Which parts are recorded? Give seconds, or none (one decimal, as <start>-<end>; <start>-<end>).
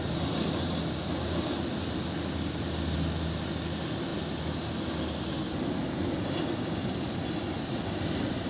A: 0.0-8.5